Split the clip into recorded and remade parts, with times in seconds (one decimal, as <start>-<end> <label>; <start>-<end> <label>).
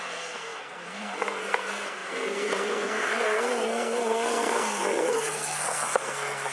0.0-6.5 remade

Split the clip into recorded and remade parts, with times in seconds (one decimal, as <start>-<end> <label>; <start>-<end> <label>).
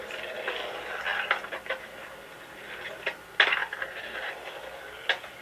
0.0-5.4 recorded